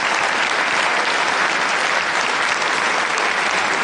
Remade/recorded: recorded